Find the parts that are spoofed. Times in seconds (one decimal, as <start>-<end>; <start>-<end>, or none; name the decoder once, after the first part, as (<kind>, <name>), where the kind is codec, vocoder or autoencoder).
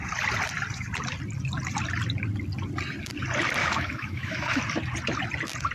3.6-4.6 (autoencoder, DAC-VAE)